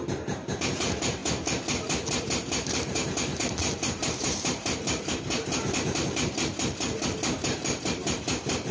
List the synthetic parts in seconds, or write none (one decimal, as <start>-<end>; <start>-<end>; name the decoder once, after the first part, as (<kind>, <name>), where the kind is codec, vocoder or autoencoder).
0.0-1.2 (vocoder, BigVGAN v2); 2.2-3.3; 3.9-8.7